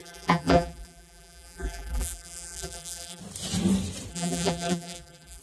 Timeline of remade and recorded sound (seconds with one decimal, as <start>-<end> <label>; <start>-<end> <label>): 0.0-3.2 remade; 3.2-4.1 recorded; 4.1-5.4 remade